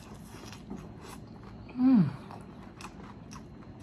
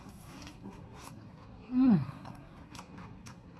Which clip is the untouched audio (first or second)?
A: first